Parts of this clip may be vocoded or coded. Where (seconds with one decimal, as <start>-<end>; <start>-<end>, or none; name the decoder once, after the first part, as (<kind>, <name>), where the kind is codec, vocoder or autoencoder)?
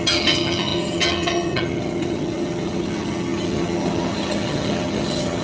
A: 0.0-5.4 (vocoder, HiFi-GAN)